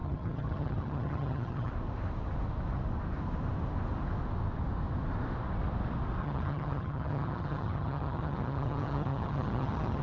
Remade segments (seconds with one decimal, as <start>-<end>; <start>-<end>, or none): 0.0-1.7; 6.2-10.0